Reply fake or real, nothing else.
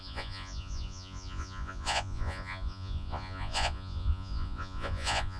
fake